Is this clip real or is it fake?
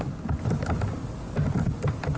real